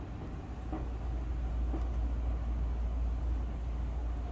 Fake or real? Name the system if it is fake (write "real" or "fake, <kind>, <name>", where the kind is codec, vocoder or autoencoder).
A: real